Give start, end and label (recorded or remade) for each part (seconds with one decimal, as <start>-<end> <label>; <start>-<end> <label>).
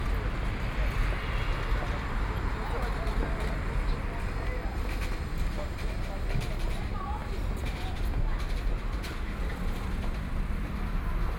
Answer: 0.0-11.4 recorded